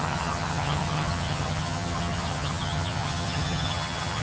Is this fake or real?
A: fake